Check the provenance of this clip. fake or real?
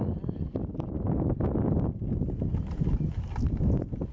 real